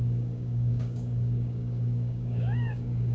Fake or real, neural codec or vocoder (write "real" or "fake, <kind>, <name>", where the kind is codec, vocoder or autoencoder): fake, codec, DAC